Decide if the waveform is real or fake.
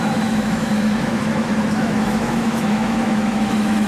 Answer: fake